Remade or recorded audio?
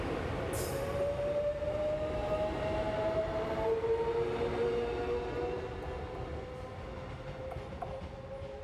recorded